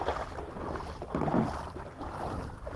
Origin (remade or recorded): recorded